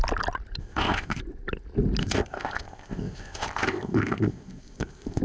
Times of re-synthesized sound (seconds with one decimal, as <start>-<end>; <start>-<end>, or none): 0.6-1.2; 2.0-5.2